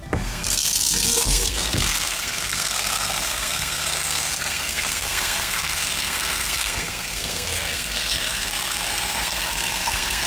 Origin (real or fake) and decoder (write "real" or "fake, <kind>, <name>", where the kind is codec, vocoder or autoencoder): fake, codec, SNAC